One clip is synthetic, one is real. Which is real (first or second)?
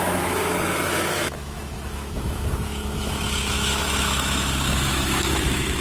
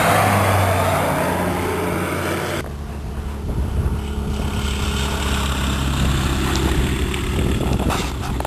second